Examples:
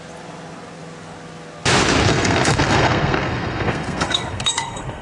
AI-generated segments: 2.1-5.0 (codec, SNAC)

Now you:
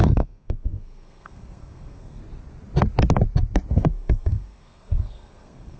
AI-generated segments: 0.0-2.2 (codec, SNAC); 3.7-5.8

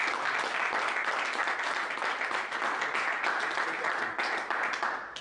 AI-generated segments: none

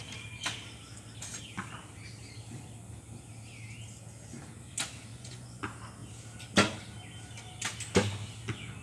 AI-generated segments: 5.1-5.6 (vocoder, Vocos)

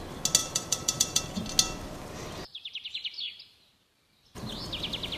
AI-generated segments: 0.4-1.2 (vocoder, BigVGAN v2); 2.5-3.7

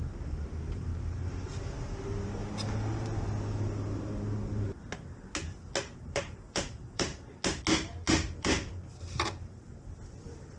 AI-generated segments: 0.0-0.9 (vocoder, BigVGAN v2); 6.0-7.1; 8.3-10.6